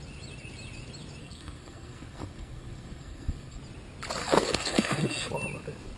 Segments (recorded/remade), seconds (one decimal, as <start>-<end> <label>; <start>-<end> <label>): 0.0-1.2 recorded; 1.2-3.6 remade; 3.6-4.2 recorded; 4.2-5.3 remade; 5.3-6.0 recorded